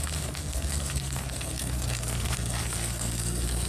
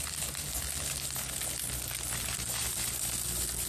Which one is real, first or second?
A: second